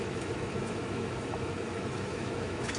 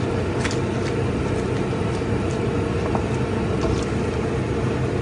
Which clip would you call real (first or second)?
second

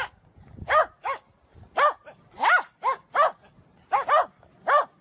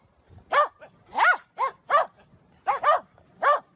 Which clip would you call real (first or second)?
first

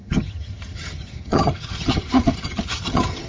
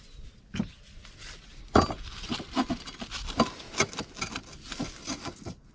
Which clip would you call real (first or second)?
second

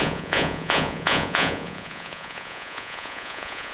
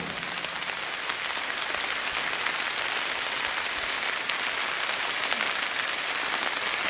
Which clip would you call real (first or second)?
second